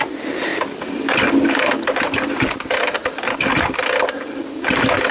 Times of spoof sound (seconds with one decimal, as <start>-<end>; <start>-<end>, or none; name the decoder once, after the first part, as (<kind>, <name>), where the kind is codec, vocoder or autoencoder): none